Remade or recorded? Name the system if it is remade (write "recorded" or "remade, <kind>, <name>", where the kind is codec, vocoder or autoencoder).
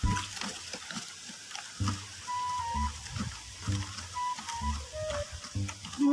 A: recorded